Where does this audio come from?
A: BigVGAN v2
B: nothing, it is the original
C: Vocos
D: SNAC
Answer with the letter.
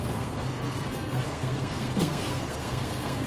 D